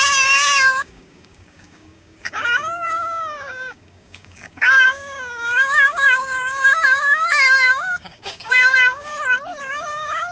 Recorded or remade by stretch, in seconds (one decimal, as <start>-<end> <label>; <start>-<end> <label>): 0.0-9.1 remade; 9.1-9.6 recorded; 9.6-10.3 remade